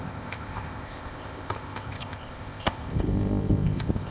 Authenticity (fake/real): fake